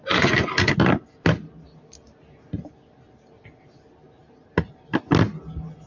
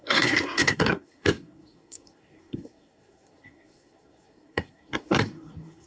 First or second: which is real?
first